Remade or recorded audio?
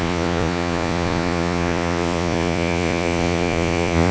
remade